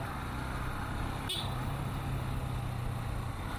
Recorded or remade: recorded